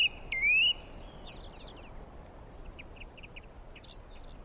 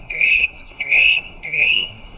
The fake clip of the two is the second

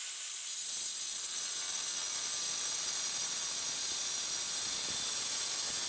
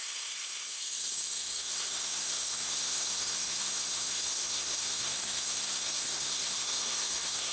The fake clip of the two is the second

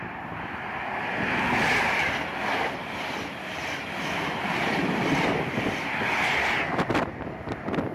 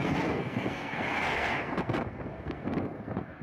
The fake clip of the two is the second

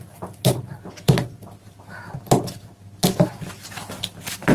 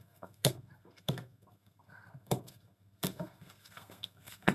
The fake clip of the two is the second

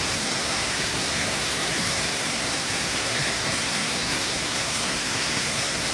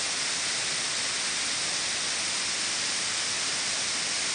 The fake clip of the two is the first